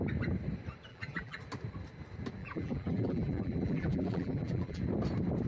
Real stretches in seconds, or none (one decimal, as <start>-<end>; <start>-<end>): 0.0-0.9; 1.4-2.4; 4.8-5.5